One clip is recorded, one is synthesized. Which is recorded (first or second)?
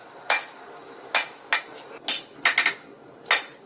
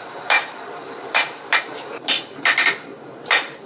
first